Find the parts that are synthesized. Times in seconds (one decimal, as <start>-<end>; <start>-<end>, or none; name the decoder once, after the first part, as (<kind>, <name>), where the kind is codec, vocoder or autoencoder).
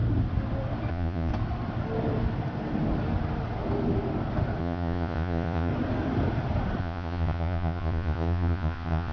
0.9-1.3 (vocoder, Vocos); 4.6-5.7; 6.8-9.1